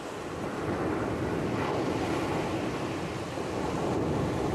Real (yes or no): yes